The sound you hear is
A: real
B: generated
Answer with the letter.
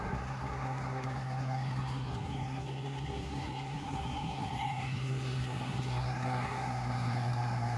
B